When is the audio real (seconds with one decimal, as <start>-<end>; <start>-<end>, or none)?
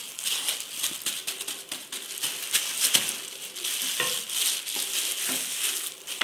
0.0-6.2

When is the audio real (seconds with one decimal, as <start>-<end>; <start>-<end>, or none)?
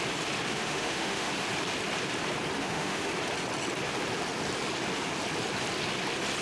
0.0-0.5; 1.3-2.6; 3.1-6.4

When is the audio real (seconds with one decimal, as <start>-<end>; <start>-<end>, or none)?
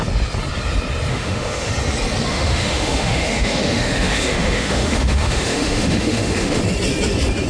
0.0-1.1; 1.7-2.3; 6.6-7.5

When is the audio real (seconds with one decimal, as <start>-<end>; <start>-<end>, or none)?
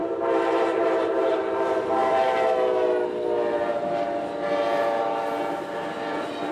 1.4-6.5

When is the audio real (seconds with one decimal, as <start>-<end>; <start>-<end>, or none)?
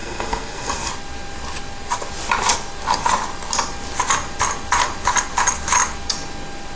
0.9-6.8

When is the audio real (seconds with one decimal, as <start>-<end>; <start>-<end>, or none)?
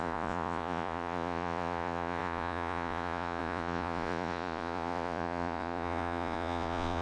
none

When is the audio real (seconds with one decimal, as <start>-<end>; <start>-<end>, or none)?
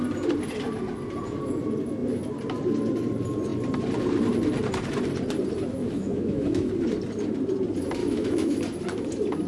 0.0-5.8; 6.7-8.0; 8.6-9.5